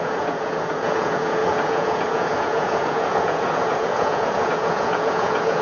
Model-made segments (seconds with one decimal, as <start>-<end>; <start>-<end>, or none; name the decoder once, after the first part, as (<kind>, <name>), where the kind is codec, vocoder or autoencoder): 0.0-5.6 (vocoder, Vocos)